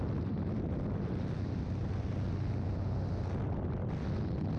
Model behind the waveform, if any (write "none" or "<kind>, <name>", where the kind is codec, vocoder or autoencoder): none